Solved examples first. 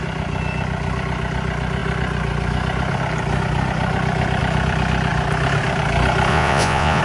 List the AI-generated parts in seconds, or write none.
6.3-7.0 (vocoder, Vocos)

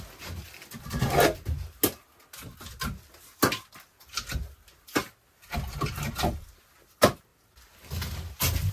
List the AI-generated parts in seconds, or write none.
none

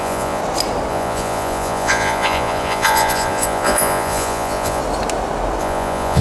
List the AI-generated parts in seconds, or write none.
0.0-0.4 (vocoder, Vocos); 0.9-4.8; 5.6-6.2

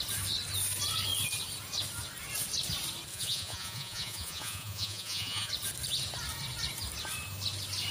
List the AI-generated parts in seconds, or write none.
3.1-5.5 (vocoder, Vocos)

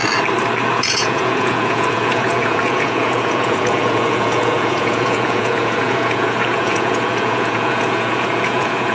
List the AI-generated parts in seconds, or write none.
0.7-8.9 (vocoder, Vocos)

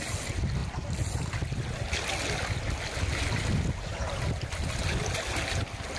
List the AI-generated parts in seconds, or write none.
none